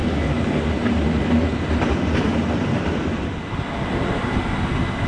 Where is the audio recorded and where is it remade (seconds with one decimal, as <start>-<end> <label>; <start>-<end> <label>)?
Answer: 0.0-0.7 remade; 0.7-5.1 recorded